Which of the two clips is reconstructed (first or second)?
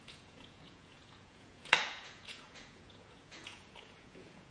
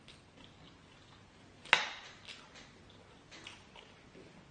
first